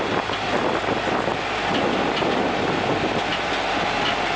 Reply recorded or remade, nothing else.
recorded